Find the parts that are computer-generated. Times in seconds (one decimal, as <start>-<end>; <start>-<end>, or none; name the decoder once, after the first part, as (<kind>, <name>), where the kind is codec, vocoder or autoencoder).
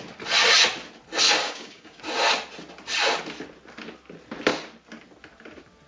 1.4-2.0 (codec, DAC)